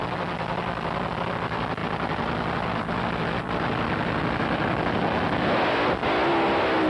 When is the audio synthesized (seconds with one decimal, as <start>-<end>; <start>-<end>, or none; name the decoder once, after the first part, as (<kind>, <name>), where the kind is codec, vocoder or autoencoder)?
none